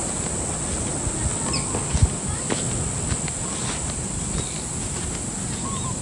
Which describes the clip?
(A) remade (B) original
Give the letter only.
B